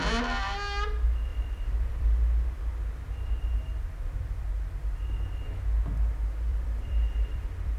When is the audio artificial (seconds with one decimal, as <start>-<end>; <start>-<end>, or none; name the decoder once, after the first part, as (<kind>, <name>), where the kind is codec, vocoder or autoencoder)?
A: 1.3-2.2 (vocoder, BigVGAN v2); 6.5-7.8